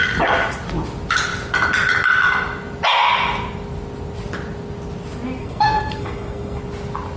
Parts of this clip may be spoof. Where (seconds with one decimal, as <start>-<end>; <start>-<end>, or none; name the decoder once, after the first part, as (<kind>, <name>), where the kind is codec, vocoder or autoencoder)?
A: 5.4-6.6 (codec, SNAC)